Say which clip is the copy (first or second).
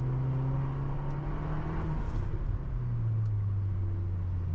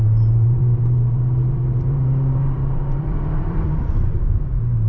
second